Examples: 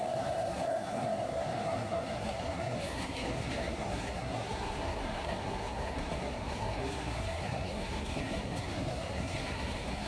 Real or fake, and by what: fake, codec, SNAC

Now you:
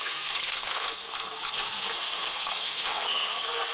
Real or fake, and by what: fake, codec, SNAC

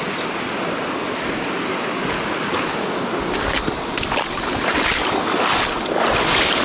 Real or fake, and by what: real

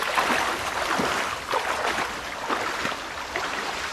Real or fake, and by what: real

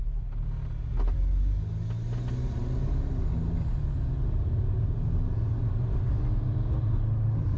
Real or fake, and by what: real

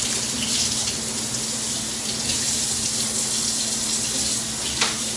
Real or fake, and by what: real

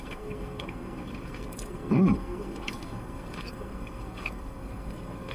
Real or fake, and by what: fake, codec, SNAC